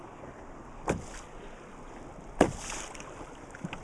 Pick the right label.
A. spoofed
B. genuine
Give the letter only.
B